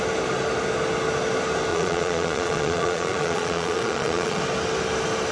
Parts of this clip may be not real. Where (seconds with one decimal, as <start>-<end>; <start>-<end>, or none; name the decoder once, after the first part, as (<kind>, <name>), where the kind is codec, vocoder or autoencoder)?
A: 1.7-4.4 (vocoder, Vocos)